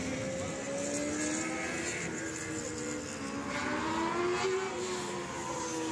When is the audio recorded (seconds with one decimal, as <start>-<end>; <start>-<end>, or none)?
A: 0.0-5.9